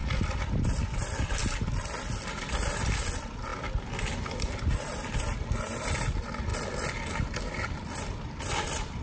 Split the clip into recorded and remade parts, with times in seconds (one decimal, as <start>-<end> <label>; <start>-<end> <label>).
0.0-0.8 remade; 0.8-9.0 recorded